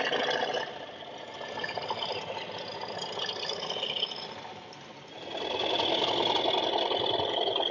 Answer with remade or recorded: recorded